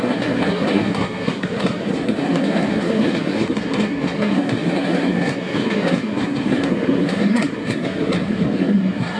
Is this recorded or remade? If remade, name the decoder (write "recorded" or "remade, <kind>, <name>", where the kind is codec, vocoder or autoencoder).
remade, codec, SNAC